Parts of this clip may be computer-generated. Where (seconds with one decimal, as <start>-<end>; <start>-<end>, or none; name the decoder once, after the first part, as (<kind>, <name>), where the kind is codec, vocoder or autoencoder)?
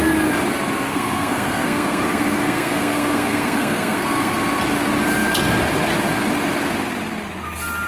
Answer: 0.9-4.4 (codec, SNAC)